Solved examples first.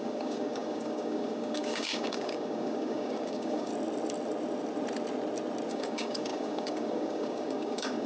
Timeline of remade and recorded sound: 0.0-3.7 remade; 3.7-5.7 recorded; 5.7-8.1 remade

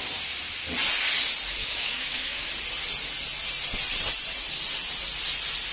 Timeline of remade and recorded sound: 0.0-1.6 recorded; 1.6-2.5 remade; 2.5-5.7 recorded

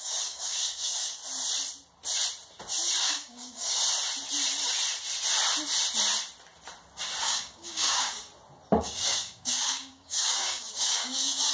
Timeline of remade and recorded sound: 0.0-1.2 remade; 1.2-3.0 recorded; 3.0-3.8 remade; 3.8-7.2 recorded; 7.2-8.3 remade; 8.3-8.8 recorded; 8.8-11.5 remade

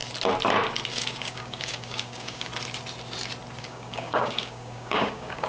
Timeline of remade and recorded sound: 0.0-0.9 recorded; 0.9-2.5 remade; 2.5-3.6 recorded; 3.6-5.5 remade

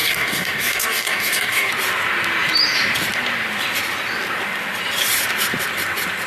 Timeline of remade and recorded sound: 0.0-1.7 remade; 1.7-6.3 recorded